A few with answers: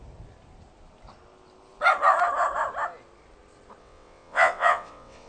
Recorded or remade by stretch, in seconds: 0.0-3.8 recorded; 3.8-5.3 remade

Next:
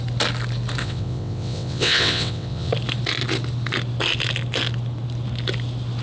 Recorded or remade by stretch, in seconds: 0.0-0.8 recorded; 0.8-2.7 remade; 2.7-6.0 recorded

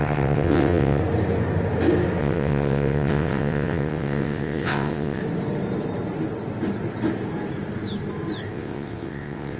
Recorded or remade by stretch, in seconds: 0.0-1.0 remade; 1.0-2.2 recorded; 2.2-5.2 remade; 5.2-8.5 recorded; 8.5-9.6 remade

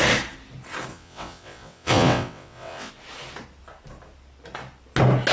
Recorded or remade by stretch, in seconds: 0.0-0.9 recorded; 0.9-2.9 remade; 2.9-5.3 recorded

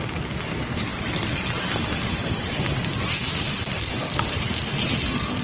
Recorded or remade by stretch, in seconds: 0.0-5.4 recorded

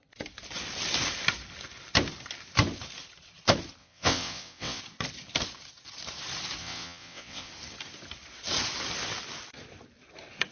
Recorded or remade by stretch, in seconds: 0.0-3.8 recorded; 3.8-4.8 remade; 4.8-6.6 recorded; 6.6-7.5 remade; 7.5-10.5 recorded

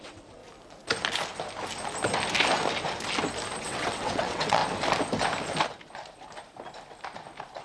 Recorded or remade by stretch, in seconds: 0.0-0.4 remade; 0.4-3.6 recorded; 3.6-4.6 remade; 4.6-7.6 recorded

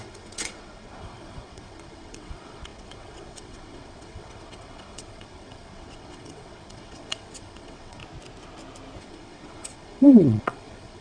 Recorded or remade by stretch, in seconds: 0.0-8.0 remade; 8.0-9.0 recorded; 9.0-11.0 remade